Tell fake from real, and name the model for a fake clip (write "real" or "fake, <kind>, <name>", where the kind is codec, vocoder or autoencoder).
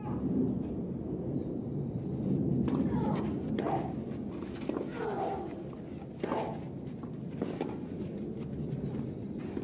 real